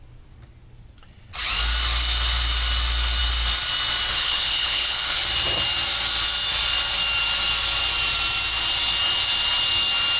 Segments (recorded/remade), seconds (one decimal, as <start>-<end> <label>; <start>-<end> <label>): 0.0-4.1 recorded; 4.1-5.2 remade; 5.2-10.2 recorded